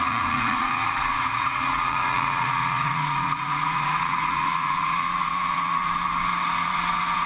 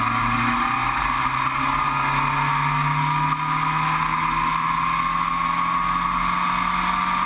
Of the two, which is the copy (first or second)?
first